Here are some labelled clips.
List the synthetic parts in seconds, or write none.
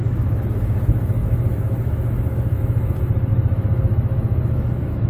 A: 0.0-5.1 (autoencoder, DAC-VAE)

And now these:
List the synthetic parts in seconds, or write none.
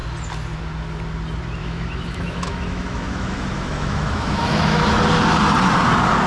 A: 1.6-5.0 (autoencoder, DAC-VAE)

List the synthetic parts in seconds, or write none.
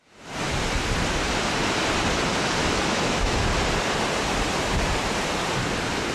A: 2.6-3.4 (autoencoder, DAC-VAE)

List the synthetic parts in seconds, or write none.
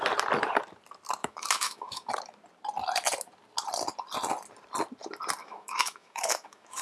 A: 1.2-2.1 (autoencoder, DAC-VAE); 5.4-6.8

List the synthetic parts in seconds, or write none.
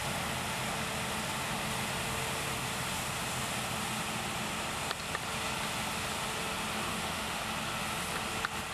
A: 6.9-7.4 (autoencoder, DAC-VAE)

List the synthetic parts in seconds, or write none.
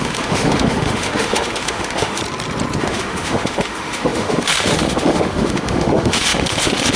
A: 0.0-2.2 (autoencoder, DAC-VAE); 2.8-7.0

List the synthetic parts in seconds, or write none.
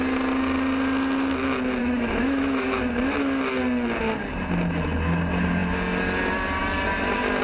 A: 1.8-2.8 (autoencoder, DAC-VAE)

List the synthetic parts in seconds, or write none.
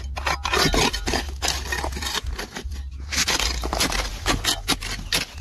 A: none